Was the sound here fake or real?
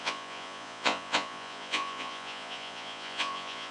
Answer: fake